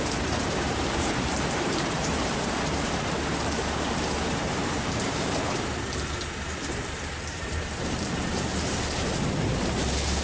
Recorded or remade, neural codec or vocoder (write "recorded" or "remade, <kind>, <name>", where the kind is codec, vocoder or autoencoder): remade, vocoder, BigVGAN v2